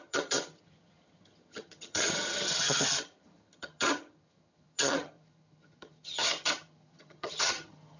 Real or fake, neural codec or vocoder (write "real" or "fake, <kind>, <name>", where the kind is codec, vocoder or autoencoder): fake, vocoder, HiFi-GAN